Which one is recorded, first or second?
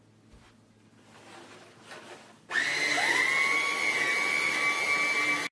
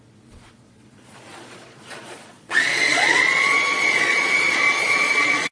first